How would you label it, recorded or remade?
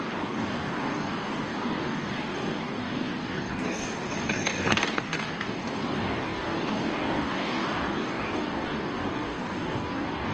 remade